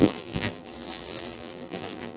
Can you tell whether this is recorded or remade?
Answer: remade